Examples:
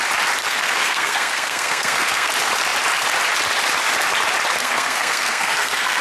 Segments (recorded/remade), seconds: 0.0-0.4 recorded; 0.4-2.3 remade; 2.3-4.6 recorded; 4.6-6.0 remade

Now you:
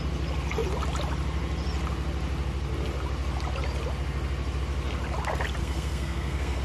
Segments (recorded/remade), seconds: 0.0-5.6 recorded; 5.6-6.6 remade

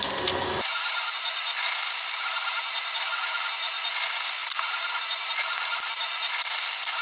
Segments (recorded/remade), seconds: 0.0-7.0 recorded

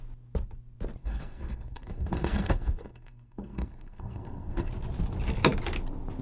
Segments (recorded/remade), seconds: 0.0-1.0 recorded; 1.0-4.7 remade; 4.7-6.2 recorded